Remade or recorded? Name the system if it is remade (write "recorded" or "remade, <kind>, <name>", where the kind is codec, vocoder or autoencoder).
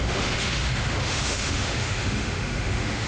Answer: remade, autoencoder, DAC-VAE